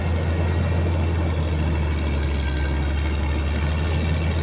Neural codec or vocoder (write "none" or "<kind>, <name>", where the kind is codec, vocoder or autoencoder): none